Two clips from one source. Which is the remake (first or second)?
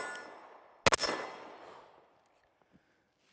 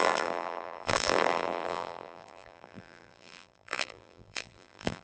second